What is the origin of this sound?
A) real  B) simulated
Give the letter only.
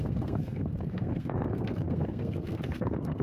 B